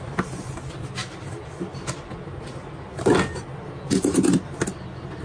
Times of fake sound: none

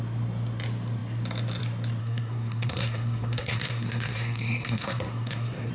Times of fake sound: 2.0-5.7 (codec, SNAC)